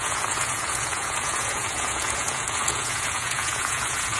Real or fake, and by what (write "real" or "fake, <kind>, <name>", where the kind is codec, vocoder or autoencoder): fake, vocoder, Vocos